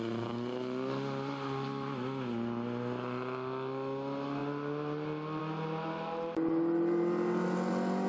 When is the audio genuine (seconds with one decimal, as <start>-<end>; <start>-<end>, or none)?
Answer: 0.0-8.1